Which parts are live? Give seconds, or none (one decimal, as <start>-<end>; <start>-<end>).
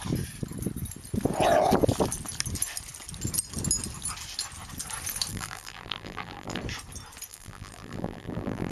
0.0-5.3; 6.6-7.3